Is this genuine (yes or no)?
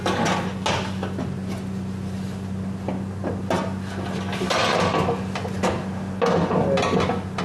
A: yes